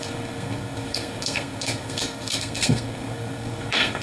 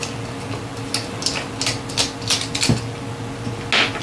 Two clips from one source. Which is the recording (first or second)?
second